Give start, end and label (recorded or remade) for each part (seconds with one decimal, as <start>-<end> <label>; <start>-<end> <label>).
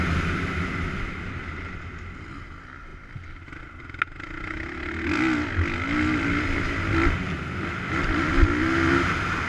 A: 0.0-9.5 recorded